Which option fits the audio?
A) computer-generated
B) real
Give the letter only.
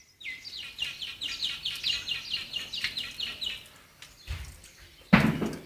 B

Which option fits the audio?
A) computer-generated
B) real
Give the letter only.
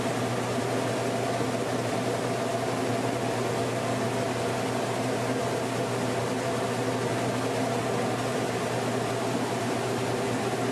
B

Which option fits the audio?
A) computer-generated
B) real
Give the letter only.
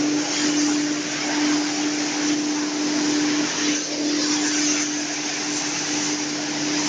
B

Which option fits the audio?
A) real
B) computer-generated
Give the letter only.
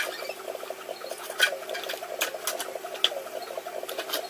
A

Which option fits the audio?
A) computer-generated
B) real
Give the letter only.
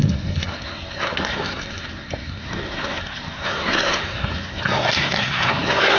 A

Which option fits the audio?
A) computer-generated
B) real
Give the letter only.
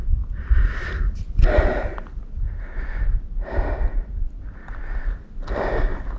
B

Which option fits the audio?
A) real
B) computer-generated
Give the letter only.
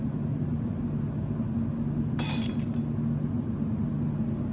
A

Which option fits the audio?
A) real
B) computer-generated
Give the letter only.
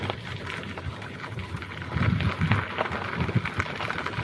A